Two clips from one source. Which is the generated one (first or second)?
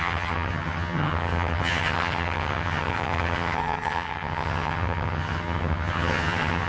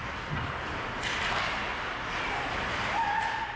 first